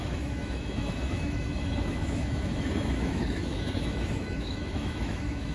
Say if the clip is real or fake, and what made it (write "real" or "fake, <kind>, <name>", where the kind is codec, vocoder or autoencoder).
fake, autoencoder, DAC-VAE